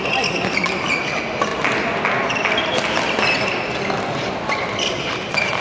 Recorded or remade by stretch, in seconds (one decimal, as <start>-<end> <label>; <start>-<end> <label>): 0.0-5.6 recorded